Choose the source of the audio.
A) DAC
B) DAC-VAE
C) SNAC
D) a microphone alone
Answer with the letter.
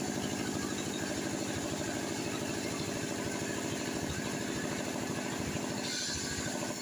D